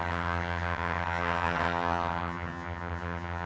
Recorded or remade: remade